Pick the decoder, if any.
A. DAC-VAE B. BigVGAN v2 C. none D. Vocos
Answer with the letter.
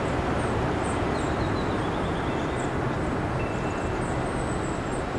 C